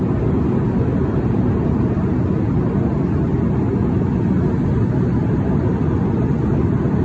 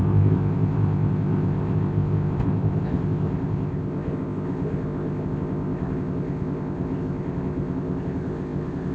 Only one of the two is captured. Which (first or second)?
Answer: first